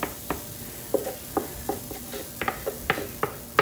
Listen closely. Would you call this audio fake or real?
real